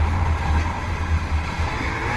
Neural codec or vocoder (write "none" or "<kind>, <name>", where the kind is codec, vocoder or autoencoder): vocoder, BigVGAN v2